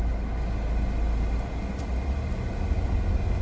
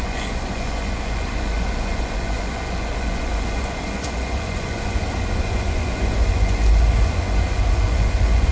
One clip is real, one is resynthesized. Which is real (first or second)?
first